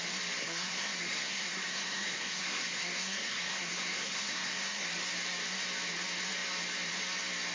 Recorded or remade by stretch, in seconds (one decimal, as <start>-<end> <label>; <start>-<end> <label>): 0.0-0.4 recorded; 0.4-4.9 remade; 4.9-7.5 recorded